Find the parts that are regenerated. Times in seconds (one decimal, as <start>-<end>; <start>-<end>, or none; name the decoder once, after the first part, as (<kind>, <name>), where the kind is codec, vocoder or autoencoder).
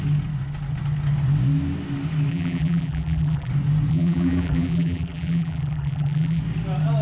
2.3-3.5 (vocoder, BigVGAN v2); 3.9-6.4